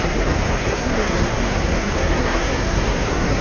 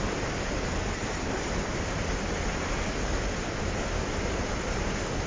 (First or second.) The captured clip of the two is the second